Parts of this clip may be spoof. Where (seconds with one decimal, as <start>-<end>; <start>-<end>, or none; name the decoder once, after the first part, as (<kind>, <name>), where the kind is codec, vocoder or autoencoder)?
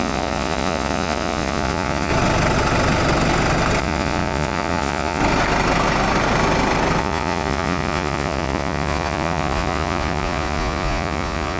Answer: 0.0-2.1 (vocoder, Vocos); 3.8-5.2; 7.0-11.6